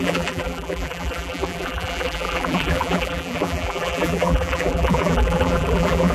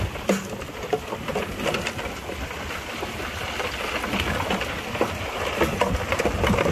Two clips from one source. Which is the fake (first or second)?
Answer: first